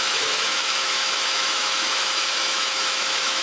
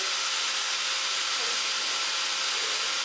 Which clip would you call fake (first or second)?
first